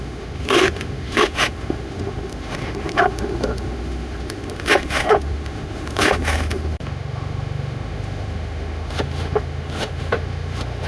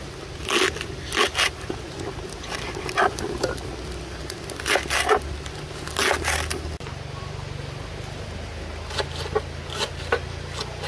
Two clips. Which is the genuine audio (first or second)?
second